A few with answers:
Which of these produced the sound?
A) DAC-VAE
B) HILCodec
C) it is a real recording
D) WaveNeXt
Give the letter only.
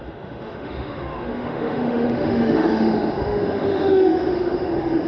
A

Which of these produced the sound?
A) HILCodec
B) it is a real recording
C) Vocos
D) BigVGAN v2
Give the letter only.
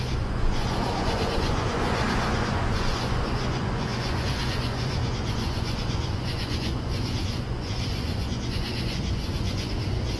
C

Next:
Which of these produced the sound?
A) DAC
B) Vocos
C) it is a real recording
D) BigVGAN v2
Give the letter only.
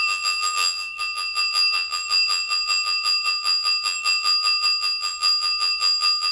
D